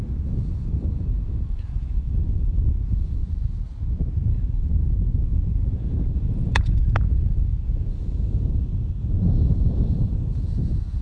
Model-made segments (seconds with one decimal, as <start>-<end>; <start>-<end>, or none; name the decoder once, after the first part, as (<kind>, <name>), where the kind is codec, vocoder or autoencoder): 0.0-3.2 (vocoder, Vocos); 4.3-11.0